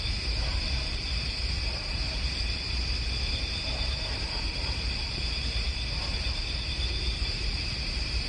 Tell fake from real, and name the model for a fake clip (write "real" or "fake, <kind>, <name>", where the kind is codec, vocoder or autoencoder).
fake, vocoder, BigVGAN v2